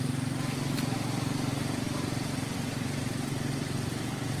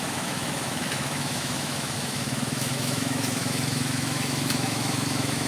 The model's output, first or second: second